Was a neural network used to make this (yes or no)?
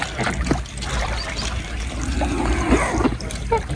no